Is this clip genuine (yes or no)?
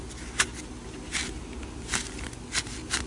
yes